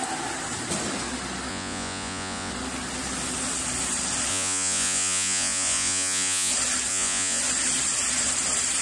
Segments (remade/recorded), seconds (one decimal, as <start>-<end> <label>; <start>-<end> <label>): 0.0-1.5 recorded; 1.5-2.5 remade; 2.5-4.3 recorded; 4.3-6.5 remade; 6.5-6.9 recorded; 6.9-7.4 remade; 7.4-8.8 recorded